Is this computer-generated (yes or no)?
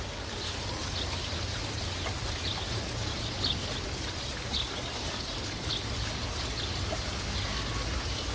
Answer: no